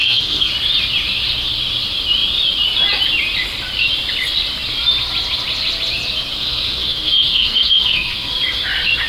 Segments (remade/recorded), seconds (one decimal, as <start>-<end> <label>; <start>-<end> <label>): 0.0-0.5 remade; 0.5-6.3 recorded; 6.3-8.3 remade; 8.3-9.1 recorded